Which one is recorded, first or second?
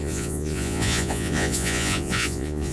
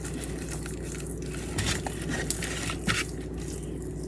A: second